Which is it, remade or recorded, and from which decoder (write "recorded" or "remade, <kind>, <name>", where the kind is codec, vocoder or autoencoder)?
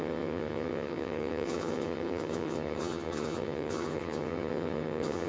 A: remade, vocoder, HiFi-GAN